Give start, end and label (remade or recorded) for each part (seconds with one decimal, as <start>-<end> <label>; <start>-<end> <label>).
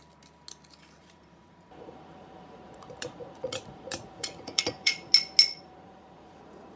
0.0-1.0 recorded; 1.0-5.1 remade; 5.1-5.5 recorded; 5.5-6.8 remade